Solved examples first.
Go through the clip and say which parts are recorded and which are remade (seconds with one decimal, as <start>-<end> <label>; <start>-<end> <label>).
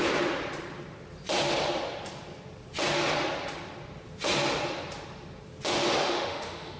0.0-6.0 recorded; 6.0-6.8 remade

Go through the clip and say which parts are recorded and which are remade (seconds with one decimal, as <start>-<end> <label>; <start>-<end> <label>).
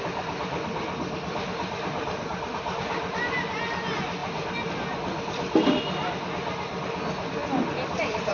0.0-8.3 recorded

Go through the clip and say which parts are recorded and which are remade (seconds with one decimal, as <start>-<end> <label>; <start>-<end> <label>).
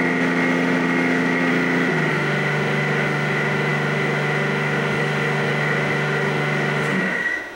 0.0-1.5 remade; 1.5-2.1 recorded; 2.1-7.6 remade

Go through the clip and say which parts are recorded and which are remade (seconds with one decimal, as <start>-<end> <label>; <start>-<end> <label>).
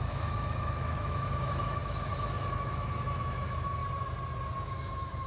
0.0-3.8 remade; 3.8-4.6 recorded; 4.6-5.3 remade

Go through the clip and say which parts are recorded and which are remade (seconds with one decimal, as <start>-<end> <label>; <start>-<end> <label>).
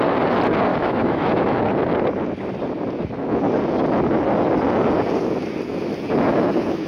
0.0-0.7 recorded; 0.7-1.6 remade; 1.6-6.9 recorded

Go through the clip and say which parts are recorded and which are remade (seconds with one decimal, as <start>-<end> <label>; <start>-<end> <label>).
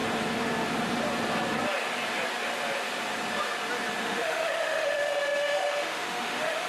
0.0-4.0 recorded; 4.0-6.7 remade